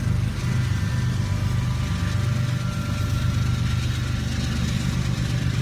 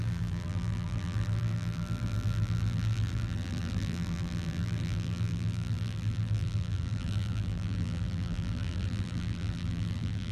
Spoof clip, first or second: second